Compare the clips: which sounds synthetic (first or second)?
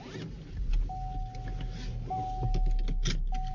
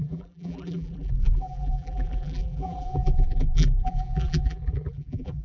second